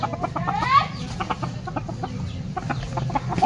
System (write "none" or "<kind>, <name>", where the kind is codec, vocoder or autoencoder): none